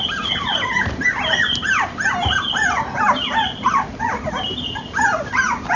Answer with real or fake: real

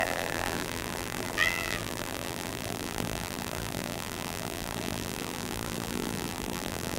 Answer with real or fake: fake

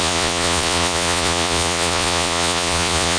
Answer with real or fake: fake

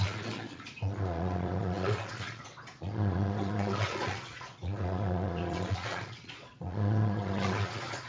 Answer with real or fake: fake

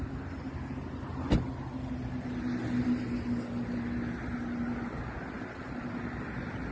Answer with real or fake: real